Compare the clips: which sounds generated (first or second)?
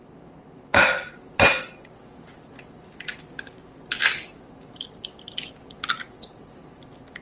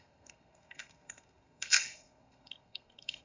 second